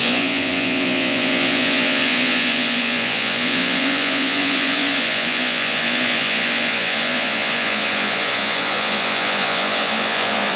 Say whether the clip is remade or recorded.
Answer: remade